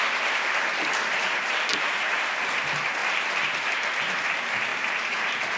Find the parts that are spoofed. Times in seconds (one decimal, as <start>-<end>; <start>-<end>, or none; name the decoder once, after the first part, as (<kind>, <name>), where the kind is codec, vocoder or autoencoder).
1.7-2.4 (vocoder, BigVGAN v2); 3.0-4.0; 4.7-5.6

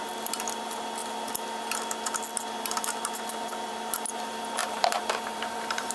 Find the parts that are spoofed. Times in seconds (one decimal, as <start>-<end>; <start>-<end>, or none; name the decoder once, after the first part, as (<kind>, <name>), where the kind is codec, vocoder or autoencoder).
4.6-5.9 (vocoder, BigVGAN v2)

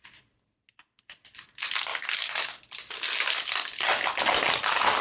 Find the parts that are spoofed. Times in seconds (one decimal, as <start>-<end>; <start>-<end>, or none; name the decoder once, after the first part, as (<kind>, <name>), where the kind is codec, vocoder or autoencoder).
none